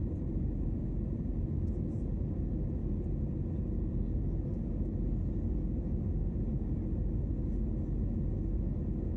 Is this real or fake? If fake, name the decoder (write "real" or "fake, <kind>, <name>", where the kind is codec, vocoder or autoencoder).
real